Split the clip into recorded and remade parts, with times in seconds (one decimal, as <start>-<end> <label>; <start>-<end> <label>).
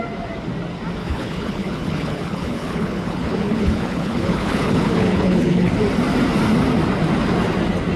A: 0.0-1.0 recorded; 1.0-5.7 remade; 5.7-8.0 recorded